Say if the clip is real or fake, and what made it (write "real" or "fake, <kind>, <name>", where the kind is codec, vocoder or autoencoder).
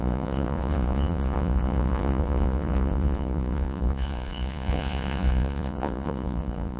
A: fake, vocoder, Vocos